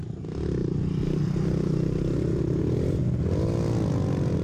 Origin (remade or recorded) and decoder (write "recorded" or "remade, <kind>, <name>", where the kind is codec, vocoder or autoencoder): recorded